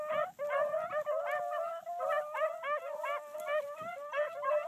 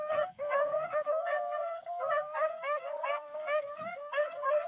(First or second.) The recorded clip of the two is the first